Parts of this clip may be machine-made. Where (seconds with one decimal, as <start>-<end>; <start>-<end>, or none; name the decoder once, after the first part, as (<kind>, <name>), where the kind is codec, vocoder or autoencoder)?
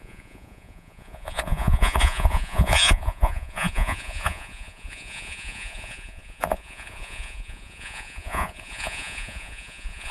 0.0-10.1 (vocoder, Vocos)